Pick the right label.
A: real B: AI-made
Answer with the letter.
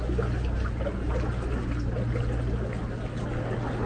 A